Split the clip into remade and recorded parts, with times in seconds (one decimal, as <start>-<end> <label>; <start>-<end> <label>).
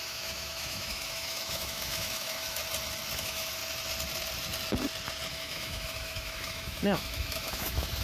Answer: 0.0-2.6 remade; 2.6-3.2 recorded; 3.2-3.6 remade; 3.6-5.3 recorded; 5.3-8.0 remade